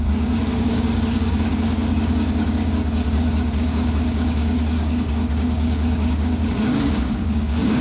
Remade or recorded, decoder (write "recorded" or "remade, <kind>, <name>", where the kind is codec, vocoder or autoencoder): remade, codec, DAC